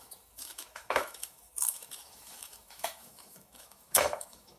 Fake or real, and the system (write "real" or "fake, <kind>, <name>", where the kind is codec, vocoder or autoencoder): fake, autoencoder, DAC-VAE